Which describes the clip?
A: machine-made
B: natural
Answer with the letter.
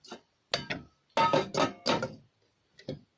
B